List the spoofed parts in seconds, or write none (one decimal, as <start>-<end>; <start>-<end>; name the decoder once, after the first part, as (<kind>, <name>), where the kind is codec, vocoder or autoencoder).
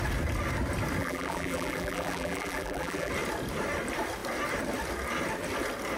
1.0-3.1 (vocoder, BigVGAN v2)